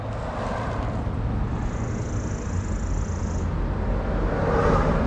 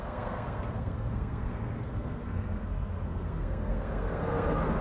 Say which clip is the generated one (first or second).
second